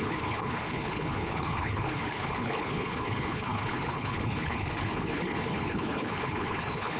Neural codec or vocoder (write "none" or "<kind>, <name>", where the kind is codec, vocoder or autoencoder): codec, HILCodec